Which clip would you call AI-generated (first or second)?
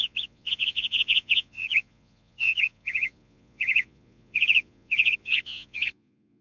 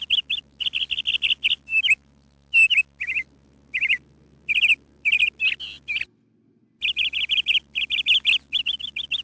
first